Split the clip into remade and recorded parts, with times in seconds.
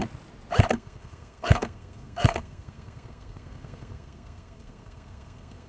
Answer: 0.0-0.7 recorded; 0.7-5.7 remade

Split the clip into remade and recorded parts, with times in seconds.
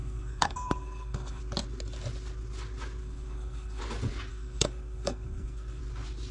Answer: 0.0-1.4 remade; 1.4-3.0 recorded; 3.0-3.8 remade; 3.8-4.3 recorded; 4.3-5.8 remade; 5.8-6.3 recorded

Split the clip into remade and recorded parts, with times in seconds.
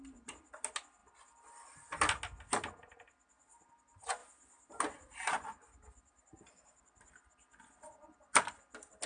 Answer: 0.0-9.1 recorded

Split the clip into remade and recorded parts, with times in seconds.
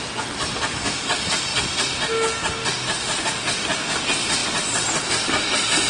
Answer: 0.0-5.9 recorded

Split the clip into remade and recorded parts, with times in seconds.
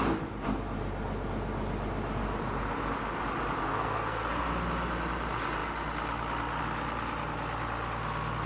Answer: 0.0-3.6 recorded; 3.6-4.4 remade; 4.4-8.5 recorded